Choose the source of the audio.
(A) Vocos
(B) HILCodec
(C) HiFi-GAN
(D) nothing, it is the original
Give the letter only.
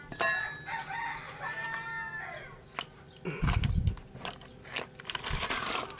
D